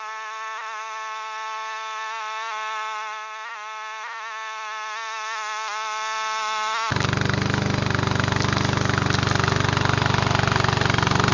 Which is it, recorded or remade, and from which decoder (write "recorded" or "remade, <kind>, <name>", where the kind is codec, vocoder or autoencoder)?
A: recorded